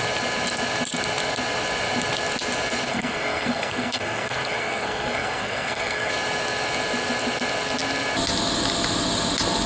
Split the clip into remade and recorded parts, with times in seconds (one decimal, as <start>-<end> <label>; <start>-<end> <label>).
0.0-2.9 recorded; 2.9-6.1 remade; 6.1-9.7 recorded